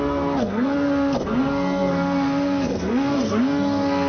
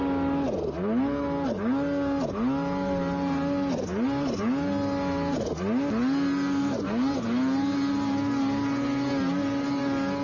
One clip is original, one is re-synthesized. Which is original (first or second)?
second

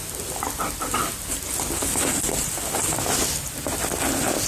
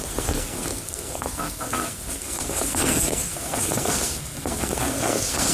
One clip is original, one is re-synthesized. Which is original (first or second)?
first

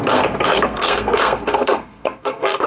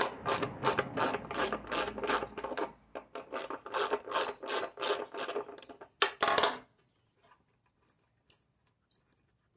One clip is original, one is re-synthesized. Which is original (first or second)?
second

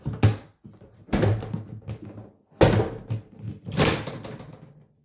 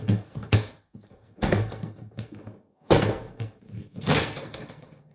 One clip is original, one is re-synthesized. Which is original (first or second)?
first